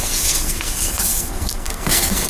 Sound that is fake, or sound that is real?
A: fake